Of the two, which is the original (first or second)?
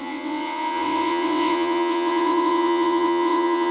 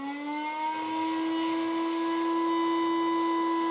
second